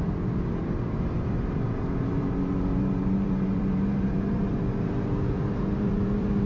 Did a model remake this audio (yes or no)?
yes